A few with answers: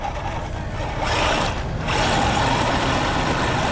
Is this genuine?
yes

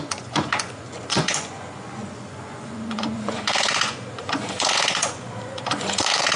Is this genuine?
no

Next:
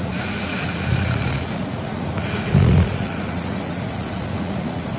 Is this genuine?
no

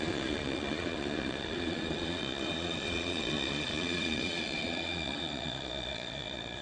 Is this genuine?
no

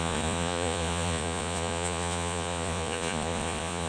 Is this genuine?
no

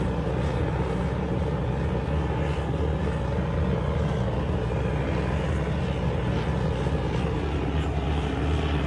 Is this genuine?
yes